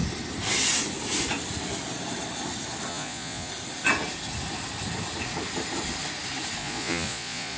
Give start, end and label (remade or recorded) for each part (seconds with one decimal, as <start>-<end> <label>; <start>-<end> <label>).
0.0-2.9 recorded; 2.9-3.5 remade; 3.5-6.6 recorded; 6.6-7.6 remade

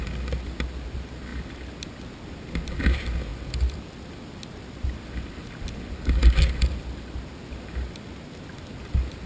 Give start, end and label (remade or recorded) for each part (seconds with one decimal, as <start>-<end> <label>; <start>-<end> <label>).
0.0-9.3 recorded

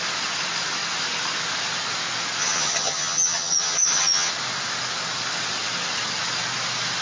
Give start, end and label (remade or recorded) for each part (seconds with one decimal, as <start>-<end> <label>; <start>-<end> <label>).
0.0-2.4 recorded; 2.4-4.3 remade; 4.3-7.0 recorded

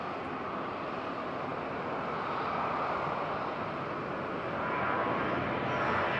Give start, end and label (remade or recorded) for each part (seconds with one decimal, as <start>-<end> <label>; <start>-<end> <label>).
0.0-6.2 recorded

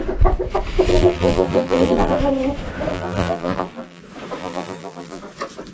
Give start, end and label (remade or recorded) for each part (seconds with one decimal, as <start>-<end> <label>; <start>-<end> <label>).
0.0-0.9 recorded; 0.9-2.2 remade; 2.2-2.9 recorded; 2.9-4.0 remade; 4.0-4.4 recorded; 4.4-5.2 remade; 5.2-5.7 recorded

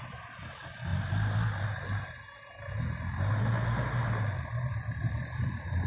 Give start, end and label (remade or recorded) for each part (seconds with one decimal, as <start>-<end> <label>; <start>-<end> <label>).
0.0-5.9 recorded

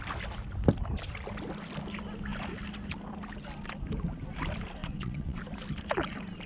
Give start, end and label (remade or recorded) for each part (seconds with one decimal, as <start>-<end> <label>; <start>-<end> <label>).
0.0-4.8 recorded; 4.8-5.4 remade; 5.4-6.5 recorded